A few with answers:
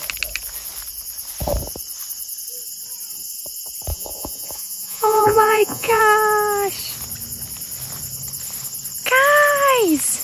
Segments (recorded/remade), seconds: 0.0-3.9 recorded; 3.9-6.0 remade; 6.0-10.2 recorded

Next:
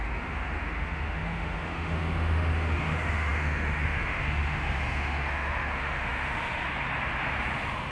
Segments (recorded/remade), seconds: 0.0-6.6 remade; 6.6-7.9 recorded

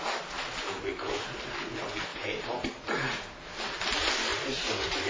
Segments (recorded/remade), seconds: 0.0-2.1 recorded; 2.1-2.8 remade; 2.8-4.3 recorded; 4.3-5.1 remade

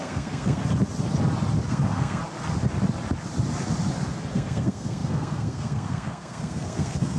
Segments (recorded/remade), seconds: 0.0-0.6 remade; 0.6-1.7 recorded; 1.7-2.2 remade; 2.2-4.3 recorded; 4.3-7.2 remade

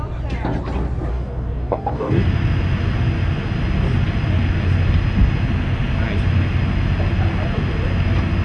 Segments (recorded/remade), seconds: 0.0-1.1 recorded; 1.1-2.2 remade; 2.2-8.4 recorded

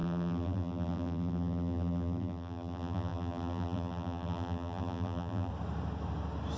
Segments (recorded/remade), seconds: 0.0-5.5 remade; 5.5-6.6 recorded

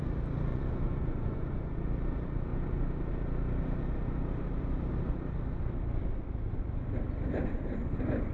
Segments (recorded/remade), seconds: 0.0-0.5 recorded; 0.5-1.8 remade; 1.8-2.5 recorded; 2.5-3.0 remade; 3.0-8.3 recorded